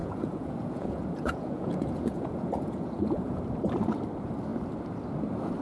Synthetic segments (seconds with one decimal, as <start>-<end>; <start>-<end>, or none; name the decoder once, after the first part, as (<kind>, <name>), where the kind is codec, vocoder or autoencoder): 0.0-3.4 (vocoder, Vocos)